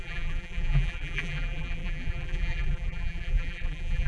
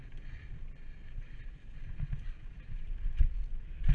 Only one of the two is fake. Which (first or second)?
first